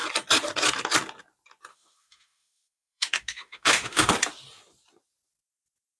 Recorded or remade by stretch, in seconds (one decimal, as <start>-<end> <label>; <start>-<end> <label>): 0.0-1.7 recorded; 1.7-4.1 remade; 4.1-6.0 recorded

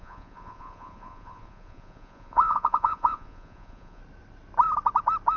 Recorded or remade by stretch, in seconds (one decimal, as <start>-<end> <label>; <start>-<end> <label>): 0.0-4.0 remade; 4.0-5.4 recorded

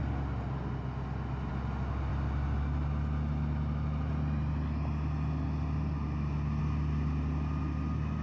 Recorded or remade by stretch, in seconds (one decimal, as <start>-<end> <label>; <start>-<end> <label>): 0.0-8.2 recorded

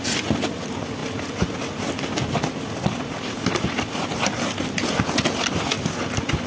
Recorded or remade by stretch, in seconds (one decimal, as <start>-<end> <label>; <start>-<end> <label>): 0.0-6.5 recorded

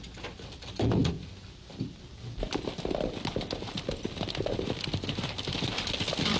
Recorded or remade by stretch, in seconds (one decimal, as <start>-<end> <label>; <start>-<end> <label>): 0.0-6.4 recorded

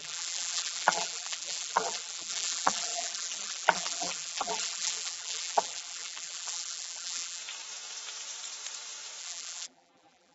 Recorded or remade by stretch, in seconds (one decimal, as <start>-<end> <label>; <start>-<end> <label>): 0.0-7.4 remade; 7.4-9.2 recorded; 9.2-10.3 remade